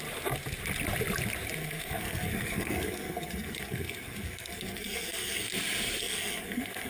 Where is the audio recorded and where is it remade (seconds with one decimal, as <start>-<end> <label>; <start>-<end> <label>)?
0.0-1.6 recorded; 1.6-5.5 remade; 5.5-6.0 recorded; 6.0-6.9 remade